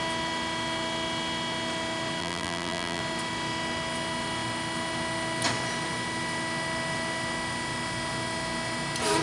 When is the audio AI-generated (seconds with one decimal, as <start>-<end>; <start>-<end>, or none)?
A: 2.2-3.0